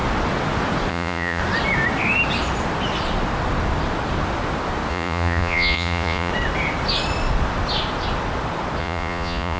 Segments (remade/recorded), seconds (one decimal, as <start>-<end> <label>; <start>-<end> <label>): 0.0-0.9 recorded; 0.9-1.4 remade; 1.4-4.9 recorded; 4.9-6.3 remade; 6.3-8.8 recorded; 8.8-9.6 remade